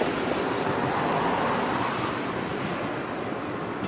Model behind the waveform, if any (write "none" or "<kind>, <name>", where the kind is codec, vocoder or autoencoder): none